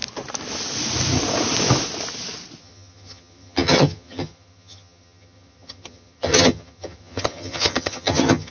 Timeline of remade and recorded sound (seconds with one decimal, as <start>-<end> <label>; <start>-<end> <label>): 0.0-2.6 recorded; 2.6-8.5 remade